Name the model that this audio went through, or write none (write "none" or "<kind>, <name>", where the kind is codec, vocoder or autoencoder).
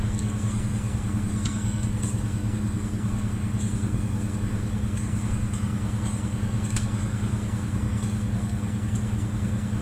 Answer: codec, SNAC